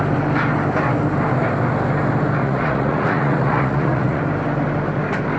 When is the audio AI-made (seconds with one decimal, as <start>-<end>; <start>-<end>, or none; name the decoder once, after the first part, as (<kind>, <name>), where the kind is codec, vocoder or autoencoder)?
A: 2.4-4.2 (vocoder, Vocos)